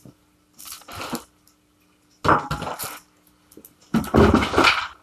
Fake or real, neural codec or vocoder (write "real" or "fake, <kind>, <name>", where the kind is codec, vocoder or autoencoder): real